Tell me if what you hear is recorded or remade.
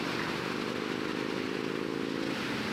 recorded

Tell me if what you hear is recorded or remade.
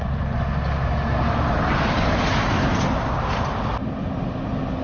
recorded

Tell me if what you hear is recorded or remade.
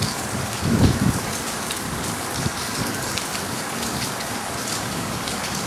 remade